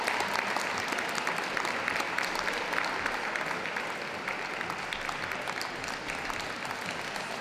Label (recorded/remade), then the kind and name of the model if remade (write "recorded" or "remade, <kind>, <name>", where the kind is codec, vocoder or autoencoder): recorded